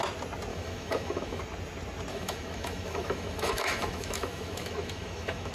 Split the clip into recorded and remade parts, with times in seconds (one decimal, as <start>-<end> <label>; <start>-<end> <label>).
0.0-0.5 recorded; 0.5-1.4 remade; 1.4-2.1 recorded; 2.1-5.5 remade

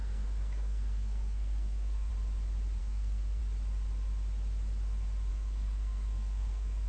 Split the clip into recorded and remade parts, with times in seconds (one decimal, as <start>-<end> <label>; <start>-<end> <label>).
0.0-2.1 remade; 2.1-2.8 recorded; 2.8-3.4 remade; 3.4-5.3 recorded; 5.3-6.9 remade

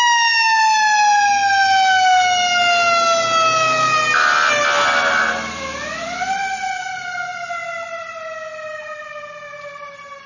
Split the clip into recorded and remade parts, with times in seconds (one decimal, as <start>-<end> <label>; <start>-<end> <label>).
0.0-10.3 recorded